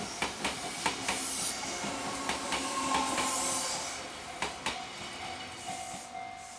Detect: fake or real real